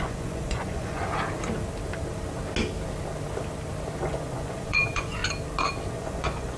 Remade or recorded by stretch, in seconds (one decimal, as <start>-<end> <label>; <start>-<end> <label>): 0.0-1.0 remade; 1.0-4.0 recorded; 4.0-5.2 remade; 5.2-5.9 recorded; 5.9-6.6 remade